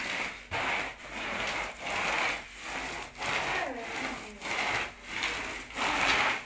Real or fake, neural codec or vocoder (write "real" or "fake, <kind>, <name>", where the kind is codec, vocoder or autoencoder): real